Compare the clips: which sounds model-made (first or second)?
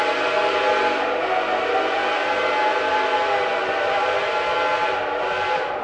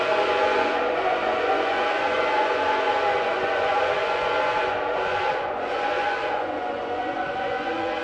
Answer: second